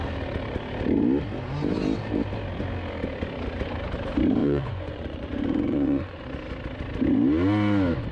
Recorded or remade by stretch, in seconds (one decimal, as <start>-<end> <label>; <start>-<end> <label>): 0.0-4.4 recorded; 4.4-6.2 remade; 6.2-8.1 recorded

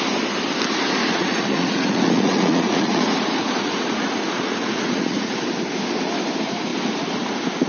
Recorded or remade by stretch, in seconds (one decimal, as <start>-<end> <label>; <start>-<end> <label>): 0.0-1.0 recorded; 1.0-5.4 remade; 5.4-7.7 recorded

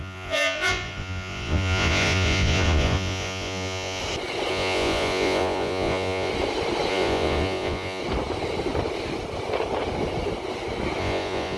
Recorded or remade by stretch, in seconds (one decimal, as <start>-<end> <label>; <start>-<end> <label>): 0.0-4.0 remade; 4.0-4.5 recorded; 4.5-6.3 remade; 6.3-6.9 recorded; 6.9-8.0 remade; 8.0-11.0 recorded; 11.0-11.6 remade

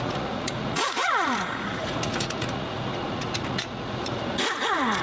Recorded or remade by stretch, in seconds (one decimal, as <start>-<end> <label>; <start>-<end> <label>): 0.0-5.0 remade

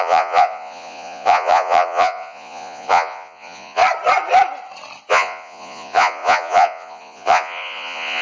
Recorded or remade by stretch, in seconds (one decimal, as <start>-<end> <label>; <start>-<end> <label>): 0.0-3.8 remade; 3.8-5.1 recorded; 5.1-8.2 remade

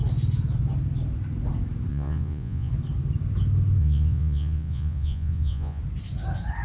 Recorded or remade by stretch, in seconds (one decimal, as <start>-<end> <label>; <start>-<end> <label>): 0.0-1.9 recorded; 1.9-2.7 remade; 2.7-3.8 recorded; 3.8-5.8 remade; 5.8-6.6 recorded

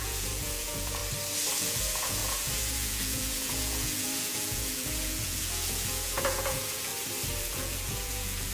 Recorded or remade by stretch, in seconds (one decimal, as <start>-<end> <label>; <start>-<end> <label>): 0.0-1.0 remade; 1.0-1.5 recorded; 1.5-6.9 remade; 6.9-7.4 recorded; 7.4-8.5 remade